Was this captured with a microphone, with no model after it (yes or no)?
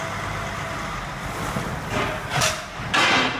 yes